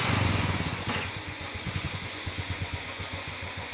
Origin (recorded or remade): remade